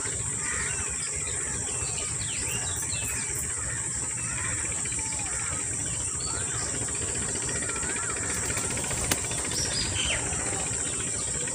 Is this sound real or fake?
real